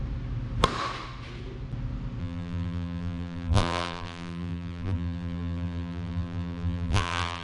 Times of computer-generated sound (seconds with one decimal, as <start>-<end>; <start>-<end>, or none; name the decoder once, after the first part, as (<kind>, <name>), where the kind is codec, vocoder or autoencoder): 2.2-7.4 (vocoder, BigVGAN v2)